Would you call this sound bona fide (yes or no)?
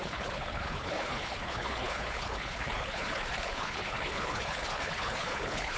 no